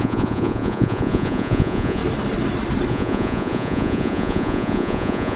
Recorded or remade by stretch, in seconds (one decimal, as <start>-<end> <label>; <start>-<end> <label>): 0.0-2.0 remade; 2.0-2.9 recorded; 2.9-5.4 remade